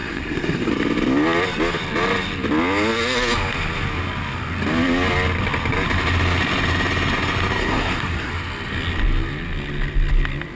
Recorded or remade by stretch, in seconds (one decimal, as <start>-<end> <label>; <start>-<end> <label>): 0.0-0.7 remade; 0.7-7.6 recorded; 7.6-8.3 remade; 8.3-10.5 recorded